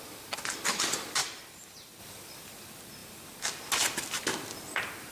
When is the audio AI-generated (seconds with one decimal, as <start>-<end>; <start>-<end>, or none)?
1.2-2.0